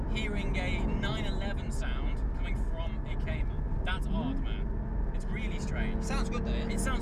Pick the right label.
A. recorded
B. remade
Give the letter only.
A